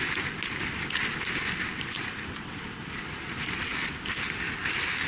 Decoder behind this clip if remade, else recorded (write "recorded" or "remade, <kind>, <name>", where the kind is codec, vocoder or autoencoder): recorded